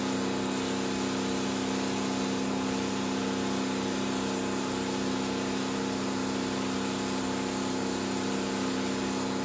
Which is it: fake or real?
real